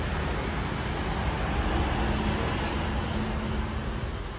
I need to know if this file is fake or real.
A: real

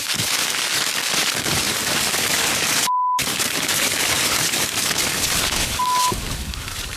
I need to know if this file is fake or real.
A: fake